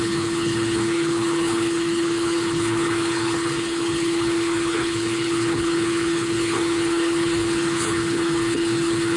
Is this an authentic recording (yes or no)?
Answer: no